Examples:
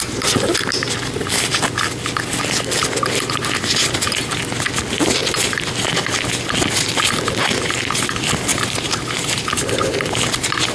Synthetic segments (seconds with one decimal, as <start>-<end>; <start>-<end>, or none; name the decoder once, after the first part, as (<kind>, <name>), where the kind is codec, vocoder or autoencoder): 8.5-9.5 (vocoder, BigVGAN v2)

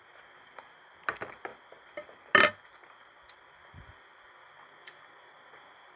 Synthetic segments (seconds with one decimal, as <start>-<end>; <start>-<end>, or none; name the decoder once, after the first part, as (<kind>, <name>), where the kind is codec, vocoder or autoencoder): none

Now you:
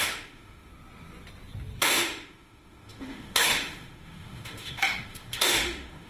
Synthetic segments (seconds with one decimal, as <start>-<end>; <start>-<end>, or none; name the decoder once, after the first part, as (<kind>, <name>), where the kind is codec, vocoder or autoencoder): 0.0-0.7 (autoencoder, DAC-VAE); 1.8-6.1

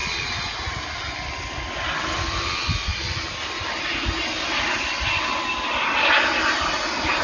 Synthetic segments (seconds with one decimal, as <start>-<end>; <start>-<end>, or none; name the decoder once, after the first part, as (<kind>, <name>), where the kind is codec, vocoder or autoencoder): none